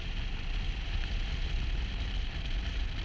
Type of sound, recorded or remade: recorded